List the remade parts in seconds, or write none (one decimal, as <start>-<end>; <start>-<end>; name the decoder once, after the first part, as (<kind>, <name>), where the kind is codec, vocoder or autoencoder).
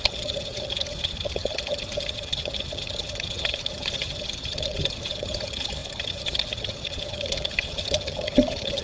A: 0.0-8.8 (vocoder, HiFi-GAN)